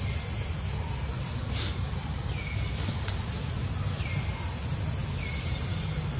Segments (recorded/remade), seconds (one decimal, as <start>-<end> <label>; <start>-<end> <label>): 0.0-6.2 recorded

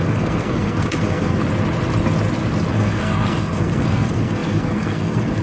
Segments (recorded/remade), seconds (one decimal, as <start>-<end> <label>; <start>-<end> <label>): 0.0-1.4 remade; 1.4-2.7 recorded; 2.7-5.4 remade